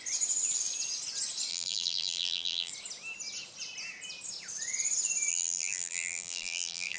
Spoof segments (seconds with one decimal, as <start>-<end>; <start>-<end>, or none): 1.5-2.7; 5.3-7.0